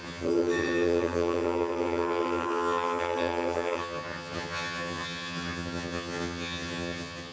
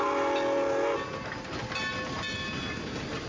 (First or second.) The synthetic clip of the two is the first